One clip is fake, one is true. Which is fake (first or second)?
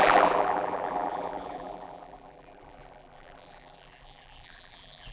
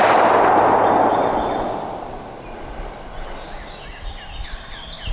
first